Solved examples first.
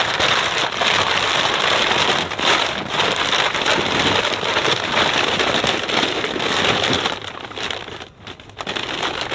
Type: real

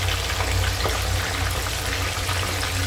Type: real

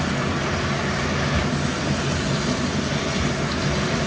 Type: real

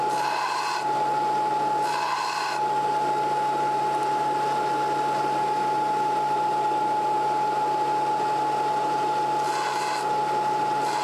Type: real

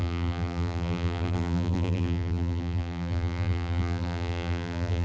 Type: fake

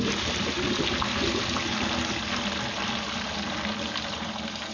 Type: real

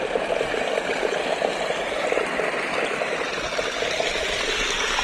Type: real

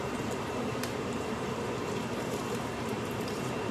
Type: fake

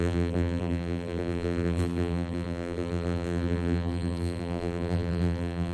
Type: fake